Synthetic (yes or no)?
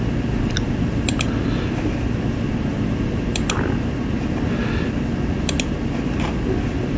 no